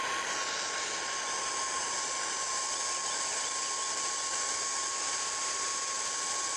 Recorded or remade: recorded